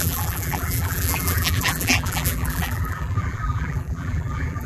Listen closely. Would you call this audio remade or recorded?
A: remade